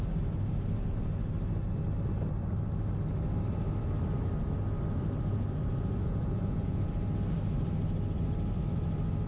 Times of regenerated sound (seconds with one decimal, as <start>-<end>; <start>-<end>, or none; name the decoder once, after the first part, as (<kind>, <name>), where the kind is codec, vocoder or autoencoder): 6.0-6.9 (vocoder, Vocos)